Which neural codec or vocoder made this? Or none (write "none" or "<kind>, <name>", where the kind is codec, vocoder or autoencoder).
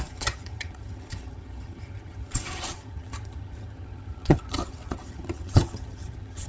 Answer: vocoder, HiFi-GAN